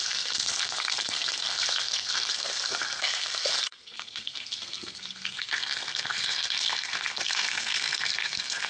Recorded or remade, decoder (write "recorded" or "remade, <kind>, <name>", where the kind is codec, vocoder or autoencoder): remade, codec, SNAC